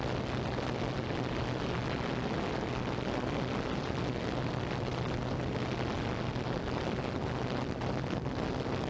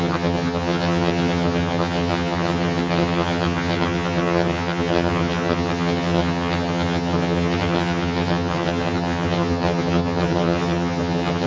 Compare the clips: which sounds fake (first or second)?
second